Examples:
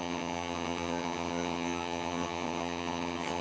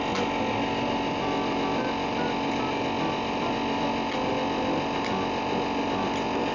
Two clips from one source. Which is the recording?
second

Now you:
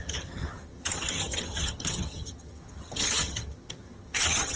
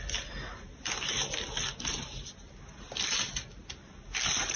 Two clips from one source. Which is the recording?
second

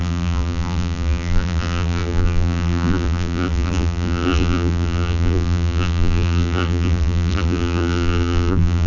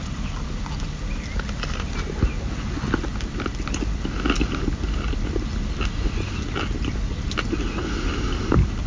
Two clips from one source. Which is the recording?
second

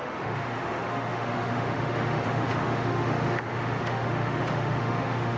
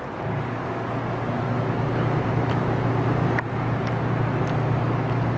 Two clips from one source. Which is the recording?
second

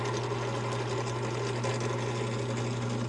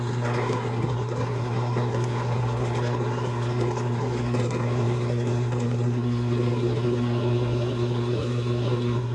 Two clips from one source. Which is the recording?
first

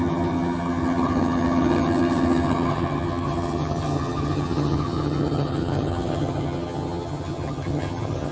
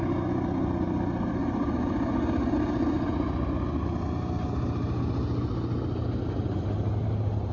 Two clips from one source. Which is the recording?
second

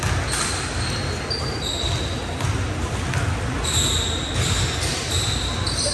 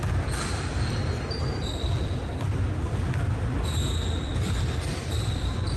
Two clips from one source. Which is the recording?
first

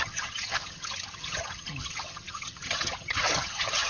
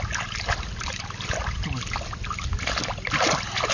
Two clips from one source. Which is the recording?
second